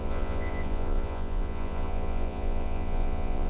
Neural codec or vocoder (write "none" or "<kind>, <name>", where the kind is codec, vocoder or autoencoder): vocoder, Vocos